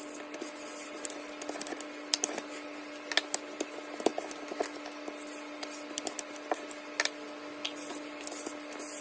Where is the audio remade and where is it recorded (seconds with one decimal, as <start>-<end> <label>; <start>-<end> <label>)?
0.0-9.0 recorded